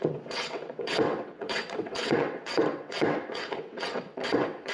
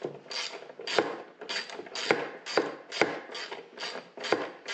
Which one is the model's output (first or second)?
first